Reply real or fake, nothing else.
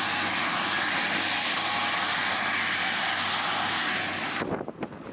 real